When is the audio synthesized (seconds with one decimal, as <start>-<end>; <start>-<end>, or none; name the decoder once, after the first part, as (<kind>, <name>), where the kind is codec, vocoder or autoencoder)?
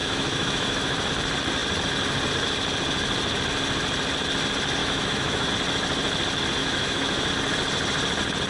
0.0-1.1 (autoencoder, DAC-VAE); 4.8-5.5; 6.6-7.3